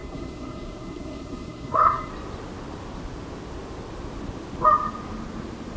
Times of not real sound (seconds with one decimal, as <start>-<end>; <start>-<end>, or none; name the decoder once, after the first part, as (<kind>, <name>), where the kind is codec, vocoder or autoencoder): 0.0-2.1 (codec, SNAC)